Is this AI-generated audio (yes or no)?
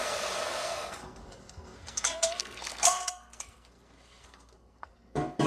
yes